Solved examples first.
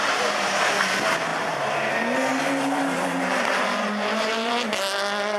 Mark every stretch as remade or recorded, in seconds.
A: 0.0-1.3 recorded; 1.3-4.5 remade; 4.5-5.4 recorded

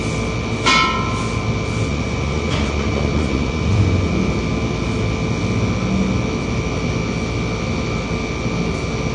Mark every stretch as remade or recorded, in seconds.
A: 0.0-1.9 recorded; 1.9-4.1 remade; 4.1-9.1 recorded

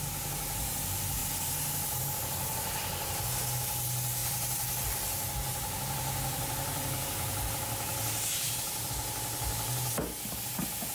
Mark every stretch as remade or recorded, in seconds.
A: 0.0-4.2 recorded; 4.2-8.9 remade; 8.9-10.9 recorded

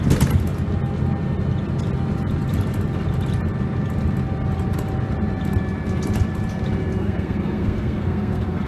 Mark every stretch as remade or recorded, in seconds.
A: 0.0-7.0 recorded; 7.0-8.7 remade

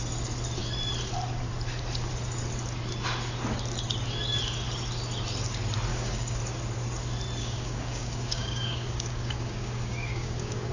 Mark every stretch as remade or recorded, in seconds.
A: 0.0-5.9 recorded; 5.9-6.4 remade; 6.4-7.4 recorded; 7.4-10.7 remade

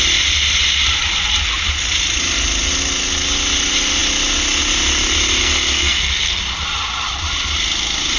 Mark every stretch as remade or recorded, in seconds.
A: 0.0-5.4 recorded; 5.4-6.4 remade; 6.4-8.2 recorded

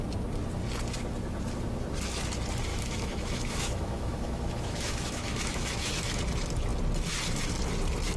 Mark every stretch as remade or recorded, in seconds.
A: 0.0-2.7 recorded; 2.7-6.2 remade; 6.2-8.2 recorded

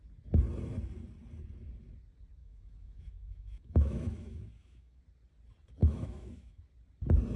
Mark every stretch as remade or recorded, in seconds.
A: 0.0-2.4 recorded; 2.4-5.0 remade; 5.0-5.8 recorded; 5.8-6.6 remade; 6.6-7.4 recorded